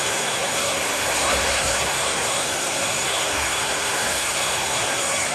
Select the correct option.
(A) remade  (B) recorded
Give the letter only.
A